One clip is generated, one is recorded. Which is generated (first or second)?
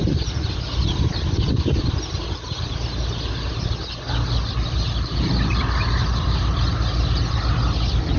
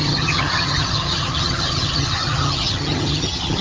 second